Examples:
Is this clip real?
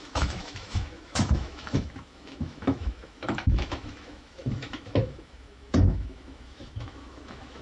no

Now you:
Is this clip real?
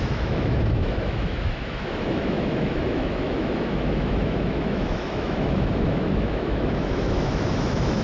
no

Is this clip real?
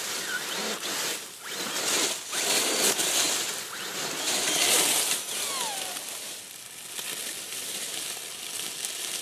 yes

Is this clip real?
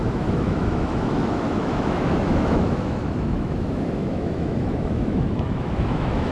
no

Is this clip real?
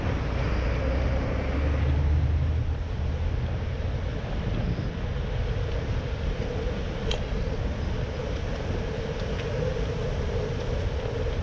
yes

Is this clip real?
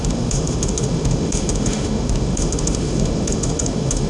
no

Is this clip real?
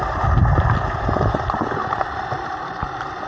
yes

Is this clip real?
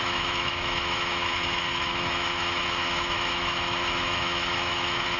no